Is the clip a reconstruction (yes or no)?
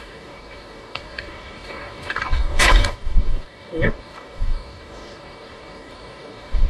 yes